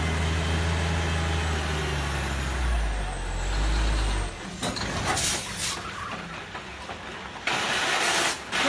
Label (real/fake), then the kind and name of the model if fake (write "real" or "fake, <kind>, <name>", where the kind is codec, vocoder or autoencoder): real